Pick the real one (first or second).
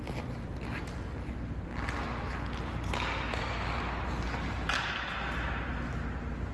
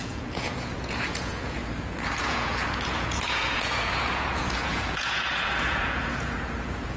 first